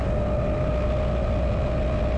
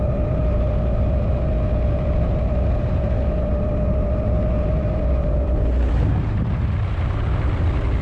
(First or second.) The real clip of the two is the first